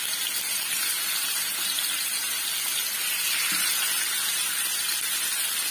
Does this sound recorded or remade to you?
recorded